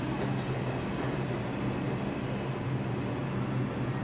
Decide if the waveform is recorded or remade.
recorded